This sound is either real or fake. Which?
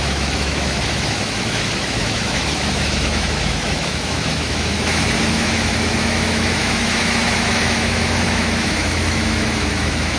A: fake